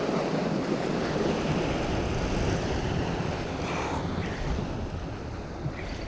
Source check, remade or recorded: remade